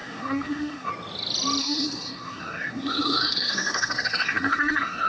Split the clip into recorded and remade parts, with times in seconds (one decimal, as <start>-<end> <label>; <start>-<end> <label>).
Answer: 0.0-0.9 remade; 0.9-1.6 recorded; 1.6-5.1 remade